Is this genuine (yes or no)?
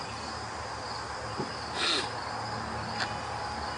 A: yes